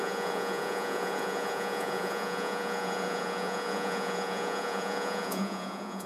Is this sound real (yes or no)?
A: no